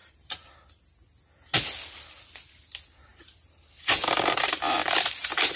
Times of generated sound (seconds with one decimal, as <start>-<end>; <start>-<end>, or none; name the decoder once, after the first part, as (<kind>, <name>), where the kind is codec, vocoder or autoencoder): 0.0-0.5 (vocoder, BigVGAN v2); 3.1-5.6